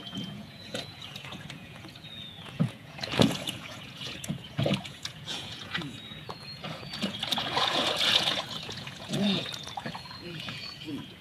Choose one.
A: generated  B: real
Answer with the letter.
A